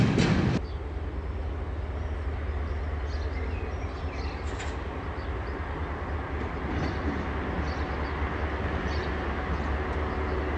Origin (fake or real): real